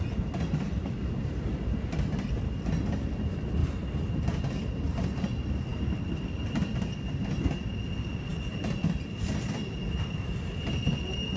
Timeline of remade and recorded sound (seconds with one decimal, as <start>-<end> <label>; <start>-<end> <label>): 0.0-11.4 recorded